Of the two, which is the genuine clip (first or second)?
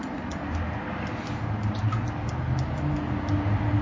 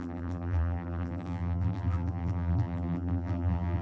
first